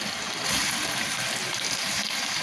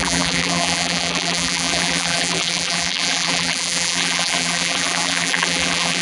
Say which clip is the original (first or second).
first